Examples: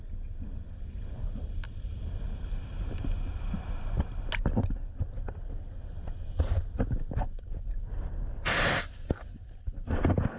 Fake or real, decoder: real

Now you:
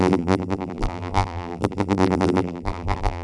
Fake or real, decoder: fake, vocoder, BigVGAN v2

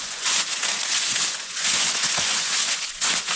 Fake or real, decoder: fake, vocoder, Vocos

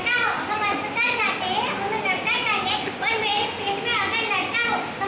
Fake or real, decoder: real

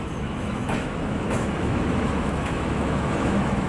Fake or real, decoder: fake, autoencoder, DAC-VAE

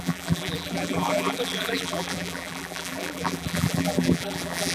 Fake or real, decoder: fake, vocoder, BigVGAN v2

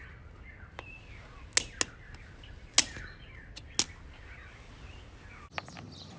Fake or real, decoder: real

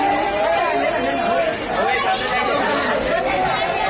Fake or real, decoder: real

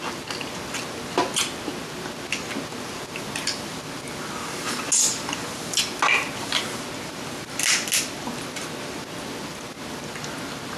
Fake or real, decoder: real